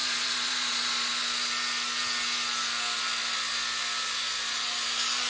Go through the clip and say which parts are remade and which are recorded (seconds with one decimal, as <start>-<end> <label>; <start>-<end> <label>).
0.0-1.1 remade; 1.1-5.3 recorded